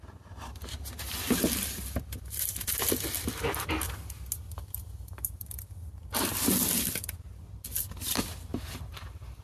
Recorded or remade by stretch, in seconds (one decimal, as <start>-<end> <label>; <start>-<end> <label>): 0.0-9.4 recorded